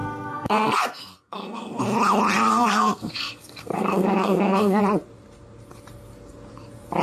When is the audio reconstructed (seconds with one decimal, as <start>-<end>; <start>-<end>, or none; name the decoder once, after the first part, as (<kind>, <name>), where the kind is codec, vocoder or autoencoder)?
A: 0.0-1.8 (codec, SNAC); 2.5-4.8